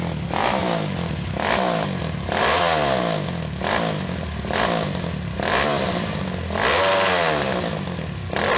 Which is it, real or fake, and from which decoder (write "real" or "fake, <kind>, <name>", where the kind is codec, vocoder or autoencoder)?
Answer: real